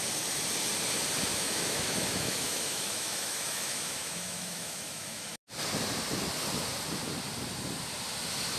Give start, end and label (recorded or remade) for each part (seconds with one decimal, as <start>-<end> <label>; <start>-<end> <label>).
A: 0.0-1.3 recorded; 1.3-5.5 remade; 5.5-8.6 recorded